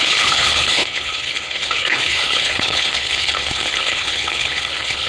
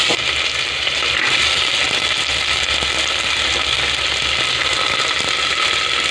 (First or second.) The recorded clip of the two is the second